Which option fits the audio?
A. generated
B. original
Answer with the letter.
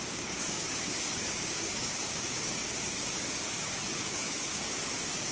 A